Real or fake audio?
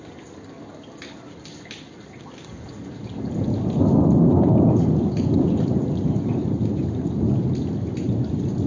real